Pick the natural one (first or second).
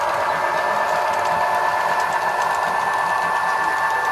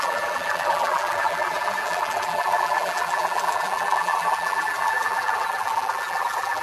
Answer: first